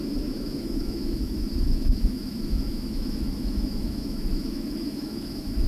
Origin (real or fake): fake